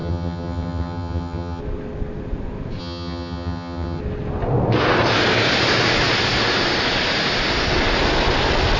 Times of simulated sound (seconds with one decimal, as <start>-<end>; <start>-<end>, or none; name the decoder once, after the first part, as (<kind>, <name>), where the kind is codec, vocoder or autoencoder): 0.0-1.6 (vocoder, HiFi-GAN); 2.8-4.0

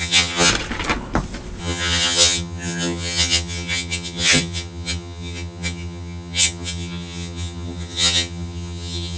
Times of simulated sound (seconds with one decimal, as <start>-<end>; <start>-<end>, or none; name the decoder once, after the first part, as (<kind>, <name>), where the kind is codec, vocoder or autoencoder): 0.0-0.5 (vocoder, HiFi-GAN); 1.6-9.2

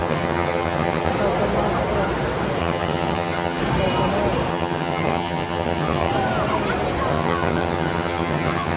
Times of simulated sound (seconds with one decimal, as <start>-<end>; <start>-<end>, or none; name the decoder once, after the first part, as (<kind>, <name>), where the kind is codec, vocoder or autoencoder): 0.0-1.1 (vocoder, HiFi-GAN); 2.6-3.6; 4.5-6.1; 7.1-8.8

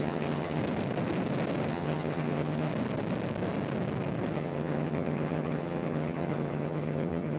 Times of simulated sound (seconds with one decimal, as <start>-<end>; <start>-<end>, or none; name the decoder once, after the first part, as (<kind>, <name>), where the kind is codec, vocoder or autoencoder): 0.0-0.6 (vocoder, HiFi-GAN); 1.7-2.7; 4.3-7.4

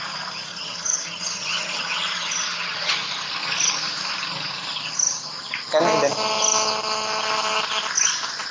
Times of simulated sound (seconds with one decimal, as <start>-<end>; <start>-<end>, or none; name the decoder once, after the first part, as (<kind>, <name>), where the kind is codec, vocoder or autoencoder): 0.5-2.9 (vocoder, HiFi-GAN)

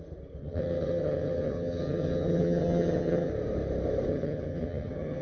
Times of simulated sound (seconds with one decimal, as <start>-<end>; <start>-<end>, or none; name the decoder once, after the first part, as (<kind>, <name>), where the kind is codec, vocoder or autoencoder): 0.4-3.3 (vocoder, HiFi-GAN); 4.1-5.2

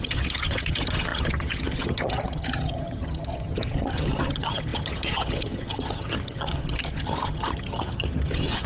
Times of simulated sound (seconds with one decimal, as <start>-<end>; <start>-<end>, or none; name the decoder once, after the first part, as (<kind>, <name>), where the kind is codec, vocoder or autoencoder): 0.0-8.7 (vocoder, HiFi-GAN)